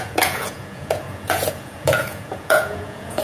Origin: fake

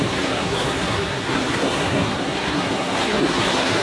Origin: fake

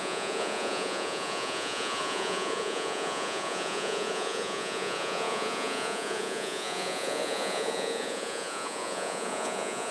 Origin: fake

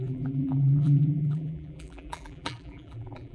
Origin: fake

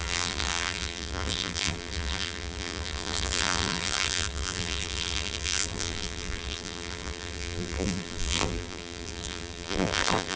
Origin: fake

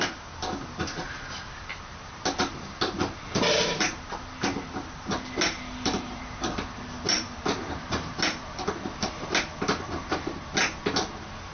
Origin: real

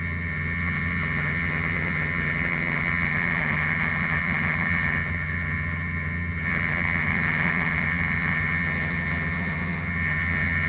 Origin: fake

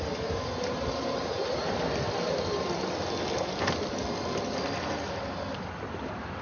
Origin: real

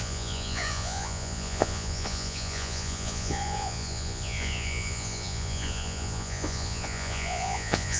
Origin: fake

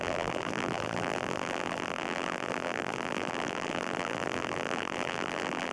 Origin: fake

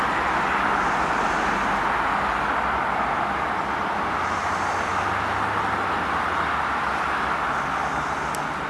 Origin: real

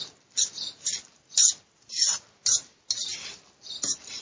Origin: real